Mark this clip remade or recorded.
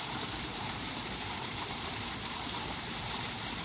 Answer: remade